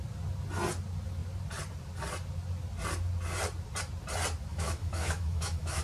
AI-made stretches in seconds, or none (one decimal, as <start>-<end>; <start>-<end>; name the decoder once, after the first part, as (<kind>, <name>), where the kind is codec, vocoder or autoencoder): 4.5-5.8 (autoencoder, DAC-VAE)